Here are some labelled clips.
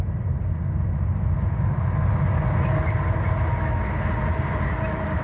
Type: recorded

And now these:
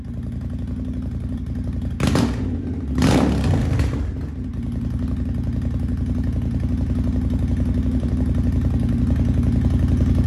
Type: recorded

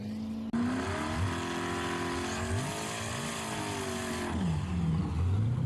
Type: recorded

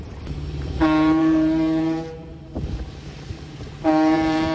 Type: remade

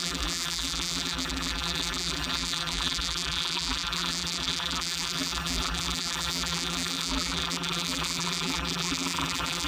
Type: remade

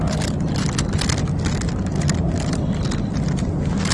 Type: recorded